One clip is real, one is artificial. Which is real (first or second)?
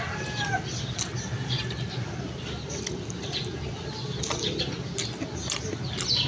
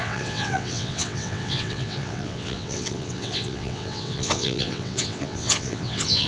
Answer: first